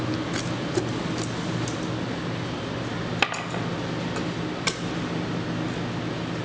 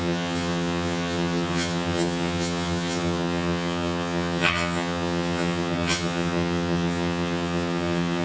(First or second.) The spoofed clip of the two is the second